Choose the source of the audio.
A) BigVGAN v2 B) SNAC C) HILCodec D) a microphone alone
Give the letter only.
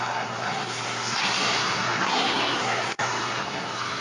B